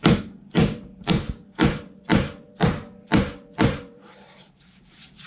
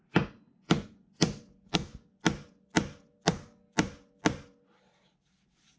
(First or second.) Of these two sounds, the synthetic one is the first